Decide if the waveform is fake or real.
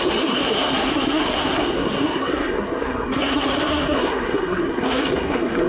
fake